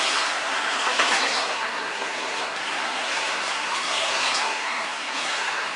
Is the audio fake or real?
fake